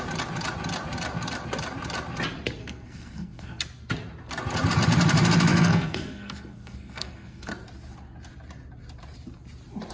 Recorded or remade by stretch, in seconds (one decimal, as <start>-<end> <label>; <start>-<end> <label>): 0.0-2.6 recorded; 2.6-3.6 remade; 3.6-5.5 recorded; 5.5-7.5 remade; 7.5-9.9 recorded